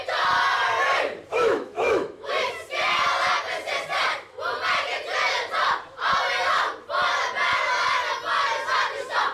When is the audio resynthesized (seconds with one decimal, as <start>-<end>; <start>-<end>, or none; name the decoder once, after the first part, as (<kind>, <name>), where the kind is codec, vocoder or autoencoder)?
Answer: 1.3-2.3 (autoencoder, DAC-VAE)